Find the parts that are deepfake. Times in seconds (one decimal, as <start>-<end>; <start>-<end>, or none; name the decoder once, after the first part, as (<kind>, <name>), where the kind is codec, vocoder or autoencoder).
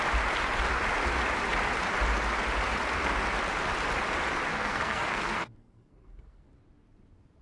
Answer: 4.5-6.5 (codec, SNAC)